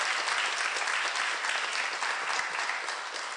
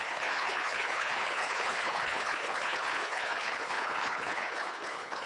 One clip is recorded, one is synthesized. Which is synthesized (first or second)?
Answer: second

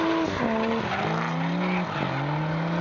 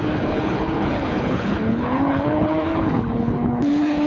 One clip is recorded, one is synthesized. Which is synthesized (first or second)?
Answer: second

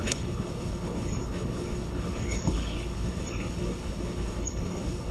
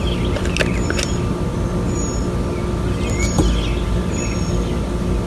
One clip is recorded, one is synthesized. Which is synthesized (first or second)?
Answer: first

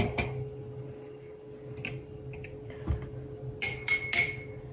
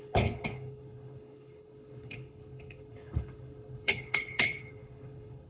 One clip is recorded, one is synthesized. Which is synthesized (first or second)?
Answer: second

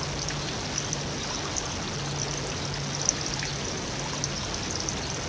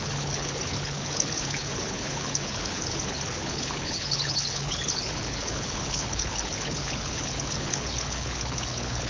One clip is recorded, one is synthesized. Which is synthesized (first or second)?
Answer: second